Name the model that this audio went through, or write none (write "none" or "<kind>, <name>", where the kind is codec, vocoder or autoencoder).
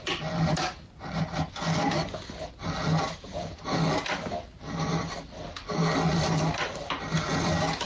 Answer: none